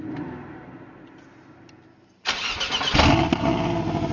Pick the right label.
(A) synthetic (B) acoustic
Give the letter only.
B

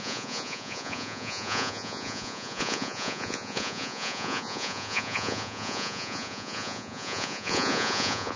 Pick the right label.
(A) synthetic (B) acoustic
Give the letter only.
A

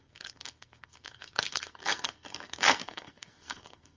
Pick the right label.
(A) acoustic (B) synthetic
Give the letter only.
B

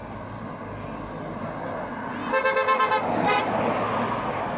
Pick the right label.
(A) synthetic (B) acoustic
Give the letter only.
B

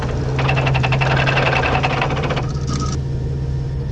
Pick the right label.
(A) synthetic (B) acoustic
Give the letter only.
B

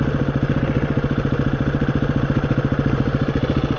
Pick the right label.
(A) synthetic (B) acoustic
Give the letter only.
B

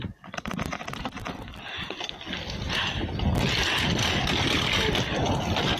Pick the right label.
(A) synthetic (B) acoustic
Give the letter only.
B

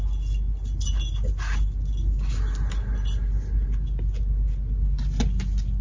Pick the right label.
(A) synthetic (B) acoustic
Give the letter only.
B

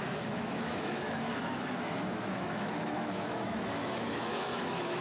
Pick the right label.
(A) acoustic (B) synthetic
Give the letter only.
B